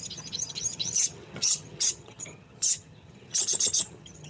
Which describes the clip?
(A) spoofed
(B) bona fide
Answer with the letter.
A